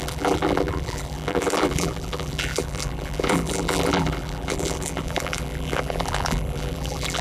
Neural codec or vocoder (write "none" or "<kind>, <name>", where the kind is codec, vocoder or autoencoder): vocoder, BigVGAN v2